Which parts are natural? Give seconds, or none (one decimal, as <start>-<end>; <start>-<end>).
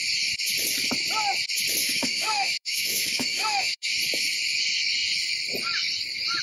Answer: 0.0-1.8; 3.9-6.4